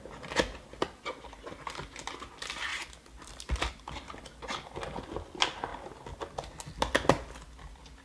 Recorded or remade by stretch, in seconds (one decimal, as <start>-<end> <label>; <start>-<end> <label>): 0.0-8.0 recorded